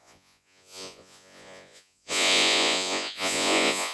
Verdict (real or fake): fake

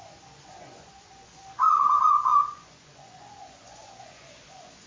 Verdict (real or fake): fake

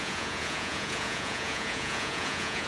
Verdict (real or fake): fake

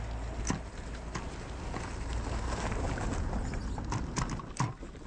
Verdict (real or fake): real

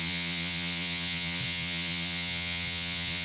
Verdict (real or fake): fake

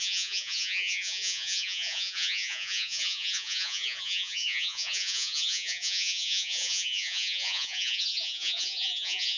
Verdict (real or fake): fake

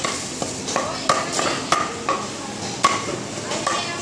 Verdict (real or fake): real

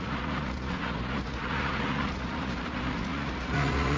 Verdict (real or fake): fake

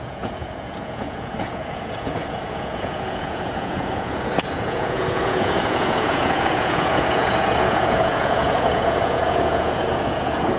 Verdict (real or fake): fake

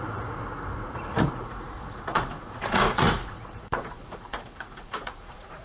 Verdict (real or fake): fake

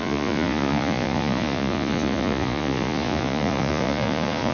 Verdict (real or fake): fake